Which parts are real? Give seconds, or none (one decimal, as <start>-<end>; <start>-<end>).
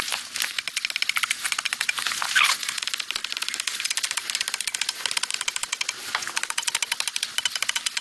0.0-8.0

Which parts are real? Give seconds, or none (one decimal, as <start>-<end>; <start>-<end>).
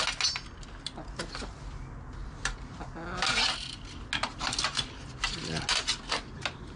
0.0-2.2; 2.8-4.2; 5.1-6.8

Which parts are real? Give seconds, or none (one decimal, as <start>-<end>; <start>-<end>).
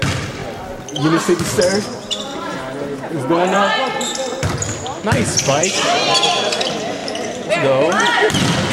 0.0-8.7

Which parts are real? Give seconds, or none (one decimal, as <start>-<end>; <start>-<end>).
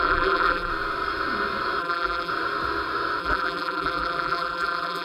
0.7-1.8; 2.3-3.2